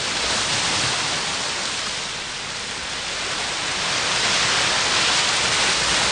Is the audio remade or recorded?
recorded